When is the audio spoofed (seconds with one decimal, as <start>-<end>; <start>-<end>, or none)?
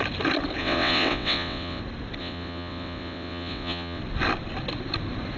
0.6-1.8; 2.2-4.0